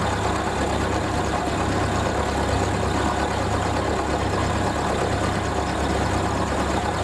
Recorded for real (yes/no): yes